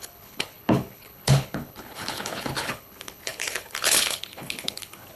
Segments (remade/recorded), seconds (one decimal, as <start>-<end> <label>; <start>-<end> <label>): 0.0-5.2 remade